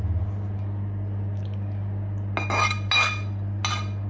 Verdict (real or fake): real